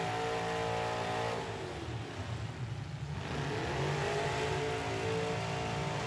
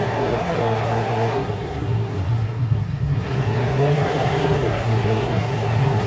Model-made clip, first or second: second